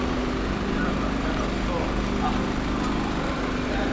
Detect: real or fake real